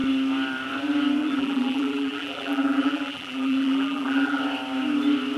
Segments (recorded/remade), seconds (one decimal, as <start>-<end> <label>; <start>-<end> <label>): 0.0-1.2 recorded; 1.2-4.4 remade; 4.4-5.4 recorded